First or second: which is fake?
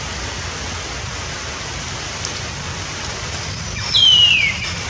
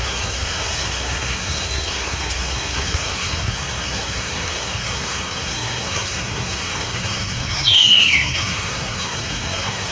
second